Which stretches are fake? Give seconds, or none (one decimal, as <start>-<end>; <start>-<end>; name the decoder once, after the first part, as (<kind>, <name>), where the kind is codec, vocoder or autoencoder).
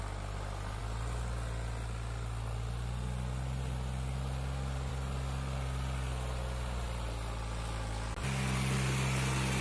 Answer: none